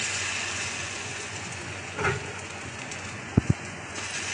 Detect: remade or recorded remade